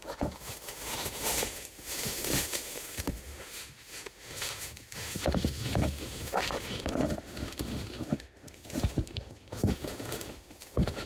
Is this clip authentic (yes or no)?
no